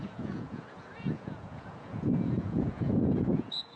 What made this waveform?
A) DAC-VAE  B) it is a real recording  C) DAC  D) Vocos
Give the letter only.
D